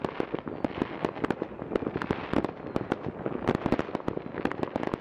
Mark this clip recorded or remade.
recorded